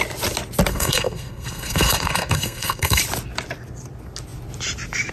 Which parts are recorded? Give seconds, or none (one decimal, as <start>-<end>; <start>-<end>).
0.0-0.7; 3.0-5.1